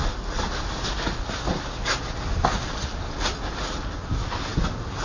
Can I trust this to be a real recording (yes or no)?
yes